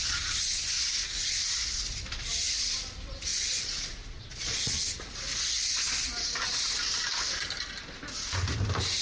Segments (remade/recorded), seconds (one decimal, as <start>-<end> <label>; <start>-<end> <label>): 0.0-3.3 recorded; 3.3-4.8 remade; 4.8-9.0 recorded